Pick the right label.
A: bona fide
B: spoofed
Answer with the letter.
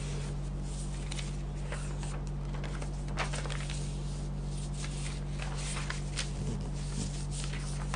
A